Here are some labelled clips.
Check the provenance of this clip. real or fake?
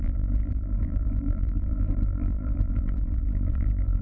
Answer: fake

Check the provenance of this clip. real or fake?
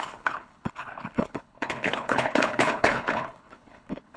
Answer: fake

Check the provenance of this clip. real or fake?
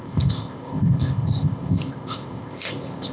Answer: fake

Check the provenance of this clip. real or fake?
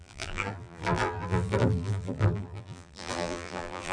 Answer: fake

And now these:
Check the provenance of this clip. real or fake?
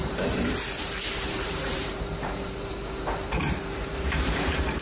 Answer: fake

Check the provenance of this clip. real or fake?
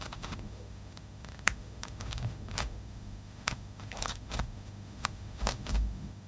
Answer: fake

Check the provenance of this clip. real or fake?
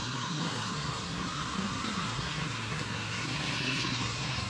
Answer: fake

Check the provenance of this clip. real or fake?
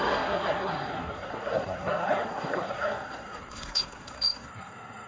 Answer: fake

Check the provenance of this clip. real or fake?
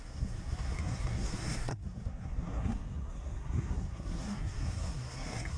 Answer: fake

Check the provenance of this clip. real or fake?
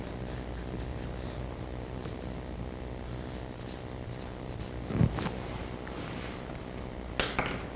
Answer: real